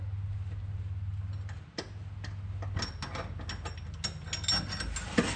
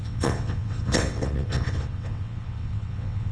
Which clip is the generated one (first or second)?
second